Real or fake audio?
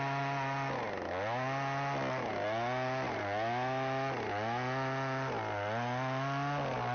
real